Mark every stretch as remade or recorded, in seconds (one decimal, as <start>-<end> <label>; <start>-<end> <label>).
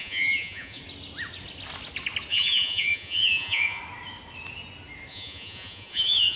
0.0-0.8 remade; 0.8-2.3 recorded; 2.3-3.8 remade; 3.8-5.1 recorded; 5.1-6.4 remade